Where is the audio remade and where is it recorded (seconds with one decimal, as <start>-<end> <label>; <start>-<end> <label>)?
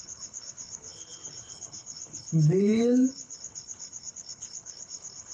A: 0.0-5.3 remade